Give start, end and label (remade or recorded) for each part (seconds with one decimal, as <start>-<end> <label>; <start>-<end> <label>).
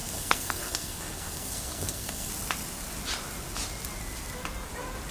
0.0-2.3 remade; 2.3-5.1 recorded